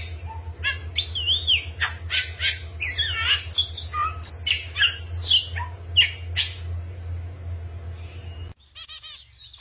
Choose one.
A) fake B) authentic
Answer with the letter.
B